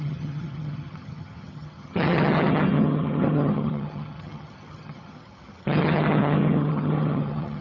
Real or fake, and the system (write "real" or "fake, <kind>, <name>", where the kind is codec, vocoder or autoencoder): fake, vocoder, HiFi-GAN